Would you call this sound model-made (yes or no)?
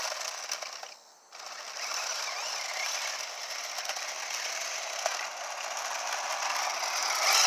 no